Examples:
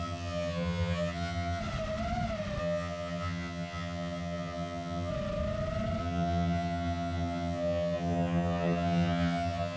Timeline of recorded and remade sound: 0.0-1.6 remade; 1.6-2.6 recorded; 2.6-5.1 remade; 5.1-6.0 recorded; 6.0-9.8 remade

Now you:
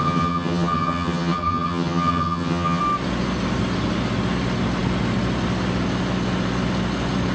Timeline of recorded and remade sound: 0.0-2.8 remade; 2.8-7.3 recorded

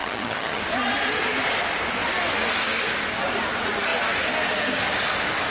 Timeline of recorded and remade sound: 0.0-0.6 remade; 0.6-5.5 recorded

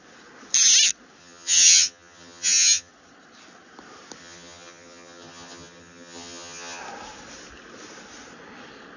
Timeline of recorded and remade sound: 0.0-1.2 recorded; 1.2-2.9 remade; 2.9-4.2 recorded; 4.2-6.8 remade; 6.8-9.0 recorded